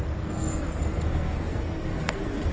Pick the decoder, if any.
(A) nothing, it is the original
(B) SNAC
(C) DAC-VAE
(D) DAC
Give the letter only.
B